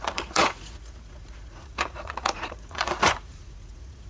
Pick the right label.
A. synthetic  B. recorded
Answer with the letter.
A